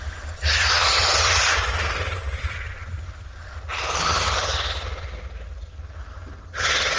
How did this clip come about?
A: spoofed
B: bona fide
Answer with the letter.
B